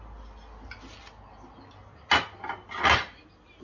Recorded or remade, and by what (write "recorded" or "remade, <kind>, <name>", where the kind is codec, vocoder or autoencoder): recorded